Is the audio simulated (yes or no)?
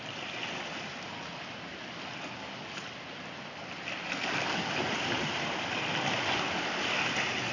no